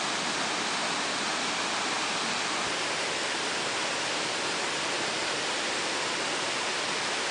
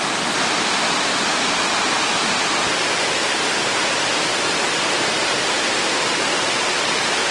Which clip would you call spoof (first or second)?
second